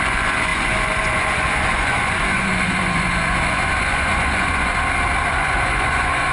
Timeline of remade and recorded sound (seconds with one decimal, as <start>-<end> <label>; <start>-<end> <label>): 0.0-4.7 remade; 4.7-5.3 recorded; 5.3-6.3 remade